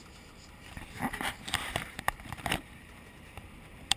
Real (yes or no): no